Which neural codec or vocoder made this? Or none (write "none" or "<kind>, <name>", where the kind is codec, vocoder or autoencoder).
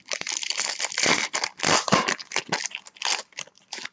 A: vocoder, BigVGAN v2